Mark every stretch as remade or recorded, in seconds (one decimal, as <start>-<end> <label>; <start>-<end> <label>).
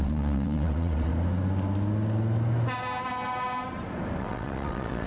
0.0-1.1 remade; 1.1-4.2 recorded; 4.2-5.1 remade